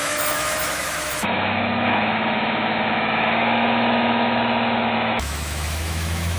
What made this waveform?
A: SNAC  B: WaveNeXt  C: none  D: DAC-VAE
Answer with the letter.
D